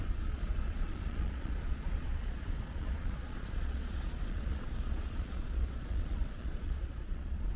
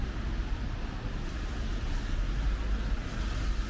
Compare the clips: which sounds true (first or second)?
second